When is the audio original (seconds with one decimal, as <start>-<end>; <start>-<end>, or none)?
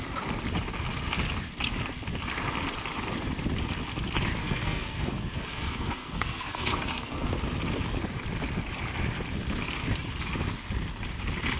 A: 0.0-4.4; 7.3-11.6